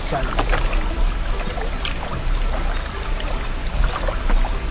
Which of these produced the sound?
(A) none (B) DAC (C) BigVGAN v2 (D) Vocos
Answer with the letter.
A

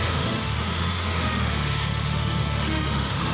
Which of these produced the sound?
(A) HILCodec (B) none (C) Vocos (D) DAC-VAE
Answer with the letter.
D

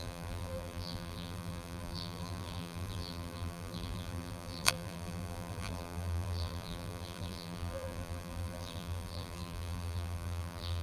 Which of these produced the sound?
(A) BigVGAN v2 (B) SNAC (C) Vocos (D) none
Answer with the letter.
A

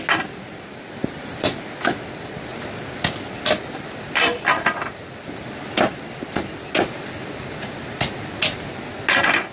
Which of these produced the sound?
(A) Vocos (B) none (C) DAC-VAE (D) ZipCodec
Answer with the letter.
B